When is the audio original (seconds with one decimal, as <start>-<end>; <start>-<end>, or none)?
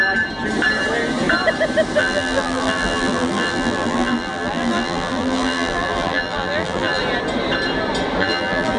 0.0-2.0; 7.0-8.2